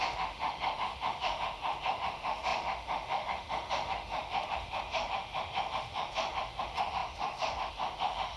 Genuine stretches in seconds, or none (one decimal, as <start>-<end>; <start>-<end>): none